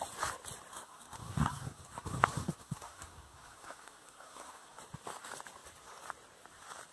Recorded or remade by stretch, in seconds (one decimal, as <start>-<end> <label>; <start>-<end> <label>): 0.0-0.7 recorded; 0.7-4.8 remade; 4.8-6.9 recorded